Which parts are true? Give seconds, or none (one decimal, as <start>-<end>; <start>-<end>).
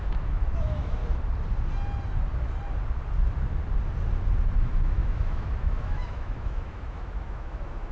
1.0-4.6